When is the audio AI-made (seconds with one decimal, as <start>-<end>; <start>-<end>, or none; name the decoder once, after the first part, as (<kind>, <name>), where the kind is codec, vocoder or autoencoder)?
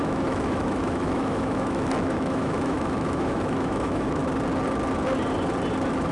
0.0-4.2 (autoencoder, DAC-VAE)